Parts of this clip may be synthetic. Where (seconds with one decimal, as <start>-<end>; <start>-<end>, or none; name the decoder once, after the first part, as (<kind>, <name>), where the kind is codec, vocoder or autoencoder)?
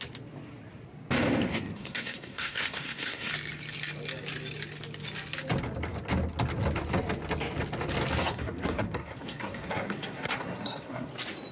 1.5-3.3 (codec, SNAC); 8.2-11.1